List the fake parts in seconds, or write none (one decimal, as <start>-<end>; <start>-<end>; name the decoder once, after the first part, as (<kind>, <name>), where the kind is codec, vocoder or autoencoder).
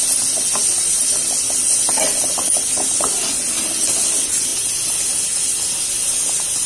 none